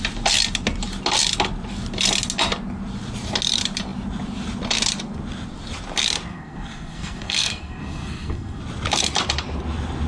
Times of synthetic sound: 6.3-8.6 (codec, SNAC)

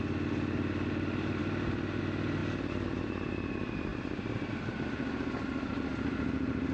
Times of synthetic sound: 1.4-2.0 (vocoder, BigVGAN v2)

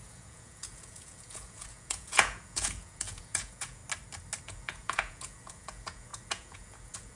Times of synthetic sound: 0.0-3.8 (vocoder, Vocos); 4.4-7.2